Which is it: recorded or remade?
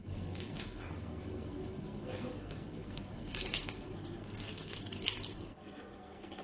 remade